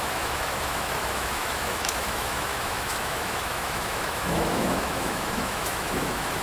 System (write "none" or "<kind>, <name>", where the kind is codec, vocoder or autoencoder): autoencoder, DAC-VAE